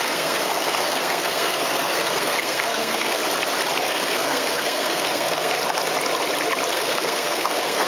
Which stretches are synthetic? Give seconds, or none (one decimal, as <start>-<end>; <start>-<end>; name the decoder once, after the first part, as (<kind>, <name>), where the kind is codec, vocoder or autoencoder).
0.0-3.2 (codec, SNAC); 3.8-5.6; 6.7-7.9